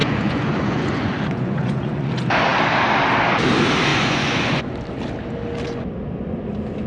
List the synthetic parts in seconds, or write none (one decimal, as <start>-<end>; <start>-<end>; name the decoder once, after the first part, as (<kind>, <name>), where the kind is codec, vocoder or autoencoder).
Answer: 0.0-2.1 (vocoder, Vocos); 3.9-4.6